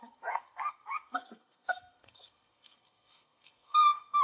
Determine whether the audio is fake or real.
fake